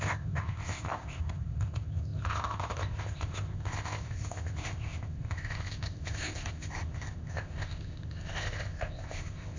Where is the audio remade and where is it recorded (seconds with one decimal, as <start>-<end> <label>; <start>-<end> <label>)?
0.0-9.6 remade

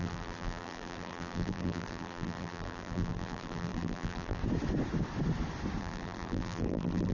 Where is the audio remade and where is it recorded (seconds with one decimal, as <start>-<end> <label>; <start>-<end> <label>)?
0.0-4.4 remade; 4.4-5.8 recorded; 5.8-7.1 remade

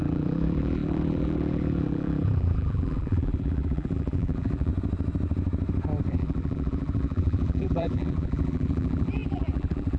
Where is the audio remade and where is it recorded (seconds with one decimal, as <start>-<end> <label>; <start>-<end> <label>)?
0.0-4.7 remade; 4.7-6.1 recorded; 6.1-10.0 remade